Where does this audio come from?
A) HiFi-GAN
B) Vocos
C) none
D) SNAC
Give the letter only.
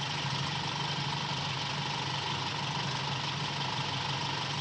C